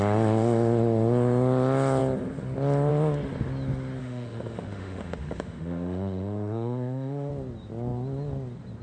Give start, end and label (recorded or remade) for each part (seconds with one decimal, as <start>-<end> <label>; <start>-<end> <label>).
0.0-4.0 recorded; 4.0-7.3 remade; 7.3-8.8 recorded